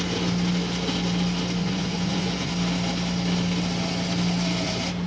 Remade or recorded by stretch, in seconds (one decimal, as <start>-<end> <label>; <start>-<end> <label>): 0.0-1.6 recorded; 1.6-2.5 remade; 2.5-5.1 recorded